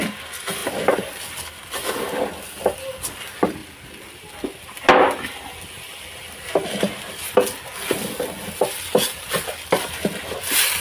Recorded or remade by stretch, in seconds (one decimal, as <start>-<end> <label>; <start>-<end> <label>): 0.0-10.8 recorded